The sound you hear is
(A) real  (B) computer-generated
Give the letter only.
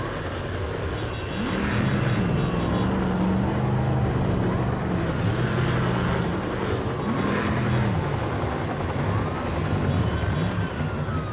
A